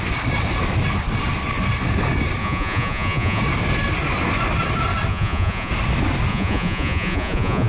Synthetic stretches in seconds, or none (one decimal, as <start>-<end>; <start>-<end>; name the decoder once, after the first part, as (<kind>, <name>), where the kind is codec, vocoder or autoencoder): 2.4-3.4 (vocoder, Vocos); 5.1-5.7; 6.3-7.7